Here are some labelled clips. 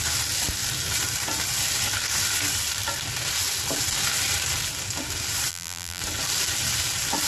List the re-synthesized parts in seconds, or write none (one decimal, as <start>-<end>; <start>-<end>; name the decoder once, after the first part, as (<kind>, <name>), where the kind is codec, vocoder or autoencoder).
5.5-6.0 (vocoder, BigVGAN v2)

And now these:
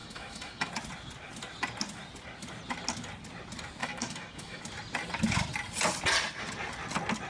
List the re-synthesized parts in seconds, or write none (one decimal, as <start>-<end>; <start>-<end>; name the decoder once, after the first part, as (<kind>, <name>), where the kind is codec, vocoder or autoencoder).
0.0-0.7 (autoencoder, DAC-VAE); 3.8-4.6

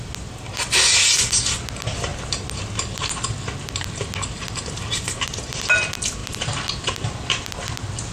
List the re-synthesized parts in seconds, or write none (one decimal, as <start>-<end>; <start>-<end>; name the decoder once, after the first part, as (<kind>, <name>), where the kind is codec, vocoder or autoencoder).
none

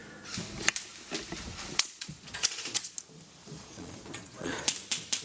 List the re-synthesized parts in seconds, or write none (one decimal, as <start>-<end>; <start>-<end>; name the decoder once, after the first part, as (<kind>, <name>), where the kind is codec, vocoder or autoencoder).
1.7-2.9 (vocoder, Vocos); 3.4-4.6